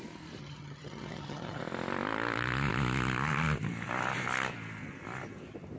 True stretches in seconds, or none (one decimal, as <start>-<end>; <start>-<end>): 0.0-0.4; 1.6-5.8